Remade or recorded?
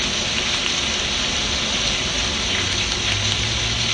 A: recorded